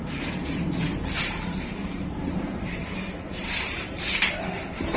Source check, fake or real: fake